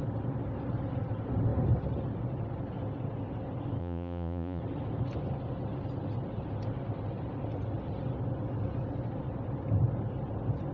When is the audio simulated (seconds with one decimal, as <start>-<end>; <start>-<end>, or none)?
3.8-4.6

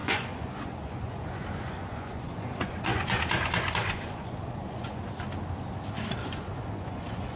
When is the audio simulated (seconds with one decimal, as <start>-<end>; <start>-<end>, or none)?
0.0-3.2; 3.8-5.0; 6.2-7.4